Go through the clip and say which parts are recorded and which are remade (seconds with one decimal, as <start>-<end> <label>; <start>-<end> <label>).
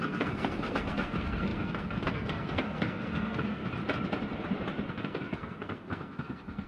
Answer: 0.0-3.6 remade; 3.6-4.9 recorded; 4.9-6.7 remade